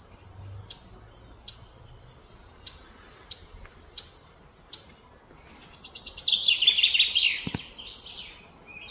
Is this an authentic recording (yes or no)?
yes